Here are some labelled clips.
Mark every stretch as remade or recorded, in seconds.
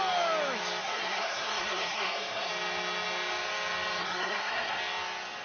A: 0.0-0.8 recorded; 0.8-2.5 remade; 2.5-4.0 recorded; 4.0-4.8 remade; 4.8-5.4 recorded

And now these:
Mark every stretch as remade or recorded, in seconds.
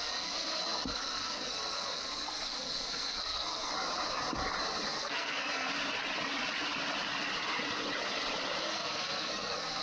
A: 0.0-3.7 remade; 3.7-4.9 recorded; 4.9-5.7 remade; 5.7-8.6 recorded; 8.6-9.8 remade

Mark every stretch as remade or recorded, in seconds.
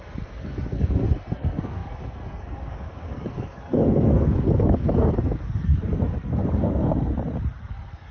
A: 0.0-7.1 remade; 7.1-7.6 recorded; 7.6-8.1 remade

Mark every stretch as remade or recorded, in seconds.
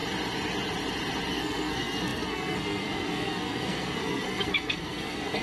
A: 0.0-1.3 recorded; 1.3-5.4 remade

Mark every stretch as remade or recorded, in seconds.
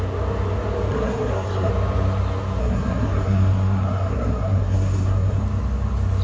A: 0.0-0.9 recorded; 0.9-1.7 remade; 1.7-2.6 recorded; 2.6-5.4 remade; 5.4-6.2 recorded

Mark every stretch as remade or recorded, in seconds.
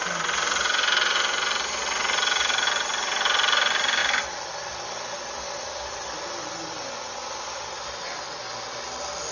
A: 0.0-9.3 recorded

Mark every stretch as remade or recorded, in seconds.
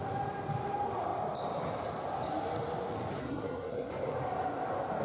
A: 0.0-3.2 recorded; 3.2-3.9 remade; 3.9-5.0 recorded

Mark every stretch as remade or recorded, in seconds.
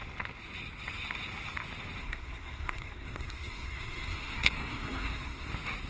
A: 0.0-2.0 recorded; 2.0-5.5 remade; 5.5-5.9 recorded